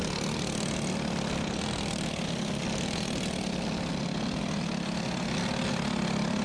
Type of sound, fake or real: real